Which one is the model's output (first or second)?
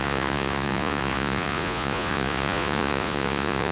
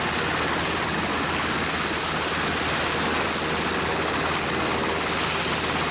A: first